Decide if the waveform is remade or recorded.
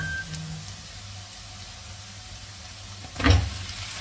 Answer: recorded